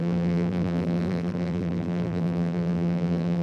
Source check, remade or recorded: remade